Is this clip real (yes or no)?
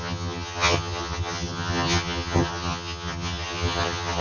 no